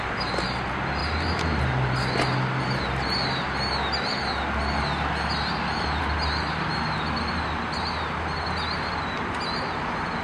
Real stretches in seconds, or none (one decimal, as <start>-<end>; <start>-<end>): 0.0-10.2